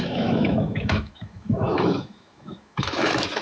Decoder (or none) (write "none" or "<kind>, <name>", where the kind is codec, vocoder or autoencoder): autoencoder, DAC-VAE